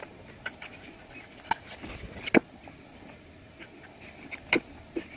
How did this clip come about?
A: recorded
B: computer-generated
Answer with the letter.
A